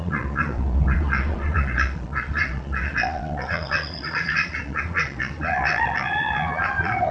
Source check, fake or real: fake